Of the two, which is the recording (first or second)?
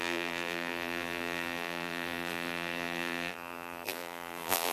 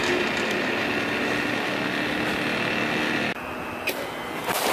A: second